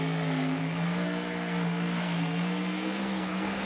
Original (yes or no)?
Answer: no